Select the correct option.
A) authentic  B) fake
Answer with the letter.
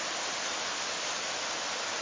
A